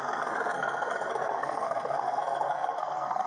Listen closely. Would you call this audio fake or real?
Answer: fake